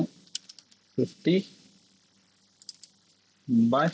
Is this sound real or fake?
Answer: real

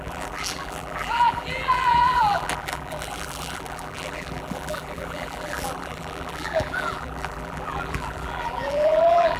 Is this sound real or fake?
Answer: fake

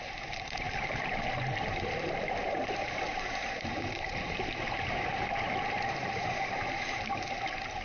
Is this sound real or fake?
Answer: fake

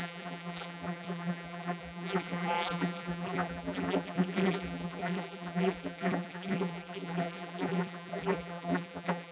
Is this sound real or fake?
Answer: fake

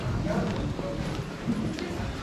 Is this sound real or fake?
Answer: fake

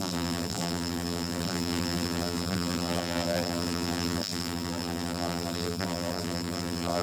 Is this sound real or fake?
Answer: fake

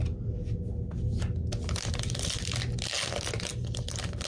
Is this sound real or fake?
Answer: real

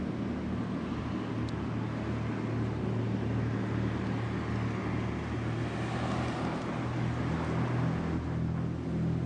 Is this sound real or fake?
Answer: real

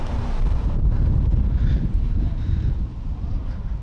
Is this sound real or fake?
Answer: fake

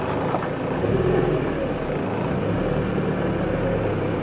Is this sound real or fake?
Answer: real